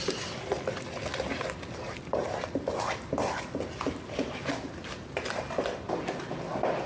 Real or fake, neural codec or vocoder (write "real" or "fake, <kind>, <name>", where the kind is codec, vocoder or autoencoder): real